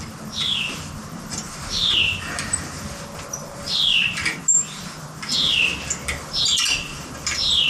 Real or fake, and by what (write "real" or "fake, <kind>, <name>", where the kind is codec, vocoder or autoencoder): real